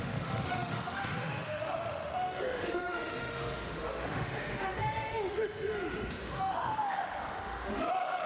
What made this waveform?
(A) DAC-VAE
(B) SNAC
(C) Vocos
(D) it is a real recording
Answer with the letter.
A